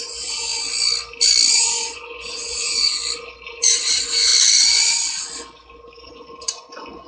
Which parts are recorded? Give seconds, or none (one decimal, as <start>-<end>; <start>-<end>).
0.5-1.5; 3.0-3.6; 4.3-6.1